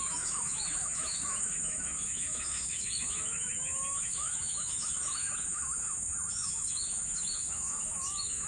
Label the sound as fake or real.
fake